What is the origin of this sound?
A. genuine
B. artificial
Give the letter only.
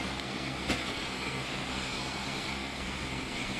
B